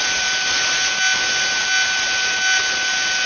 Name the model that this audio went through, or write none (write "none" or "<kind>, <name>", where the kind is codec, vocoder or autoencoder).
none